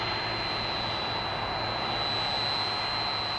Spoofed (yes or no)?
no